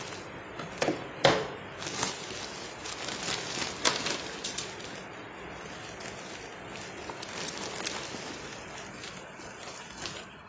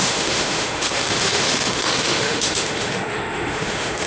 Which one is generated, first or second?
second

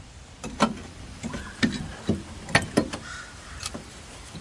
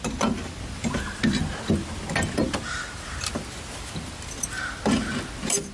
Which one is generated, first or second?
first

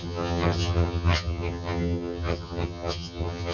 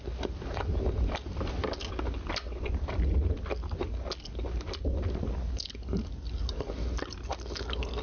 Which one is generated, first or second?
first